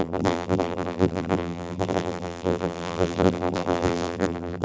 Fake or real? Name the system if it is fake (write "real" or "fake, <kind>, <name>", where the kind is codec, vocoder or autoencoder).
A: fake, vocoder, BigVGAN v2